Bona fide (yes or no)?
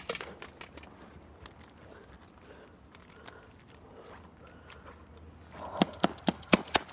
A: yes